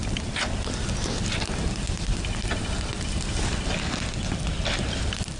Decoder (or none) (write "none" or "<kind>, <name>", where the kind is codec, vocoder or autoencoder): none